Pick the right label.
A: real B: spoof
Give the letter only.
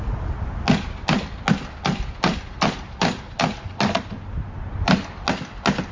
A